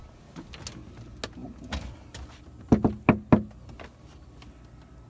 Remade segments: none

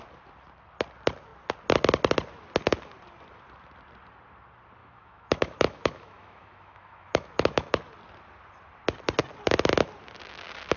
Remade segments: 4.8-7.8 (autoencoder, DAC-VAE)

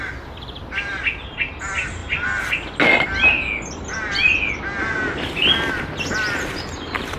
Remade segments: none